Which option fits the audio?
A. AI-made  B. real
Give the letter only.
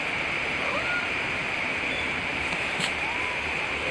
A